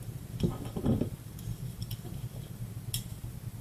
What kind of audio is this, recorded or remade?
recorded